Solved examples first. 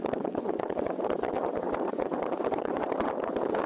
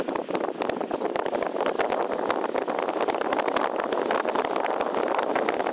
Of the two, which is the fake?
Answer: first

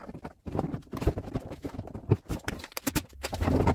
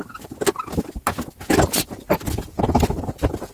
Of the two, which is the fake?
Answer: first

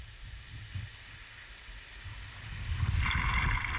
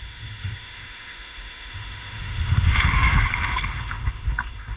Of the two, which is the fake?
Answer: second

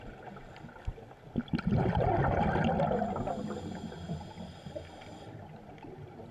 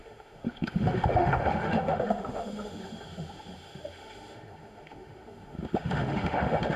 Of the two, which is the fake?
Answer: second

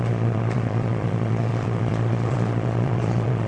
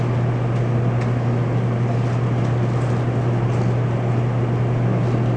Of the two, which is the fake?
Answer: first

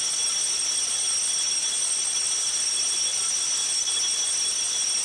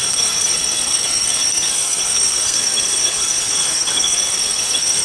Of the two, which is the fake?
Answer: second